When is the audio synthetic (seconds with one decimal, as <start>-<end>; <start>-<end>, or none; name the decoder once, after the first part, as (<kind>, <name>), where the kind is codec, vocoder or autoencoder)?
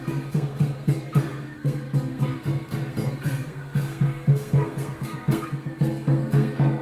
0.0-6.8 (codec, SNAC)